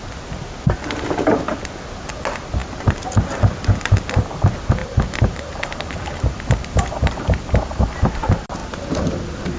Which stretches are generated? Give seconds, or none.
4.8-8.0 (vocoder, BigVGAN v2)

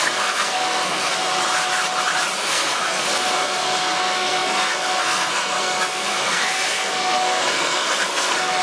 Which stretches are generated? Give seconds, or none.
0.0-1.2 (codec, SNAC); 2.4-8.6